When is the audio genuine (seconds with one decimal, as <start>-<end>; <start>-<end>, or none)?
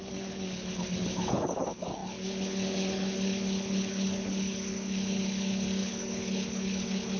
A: none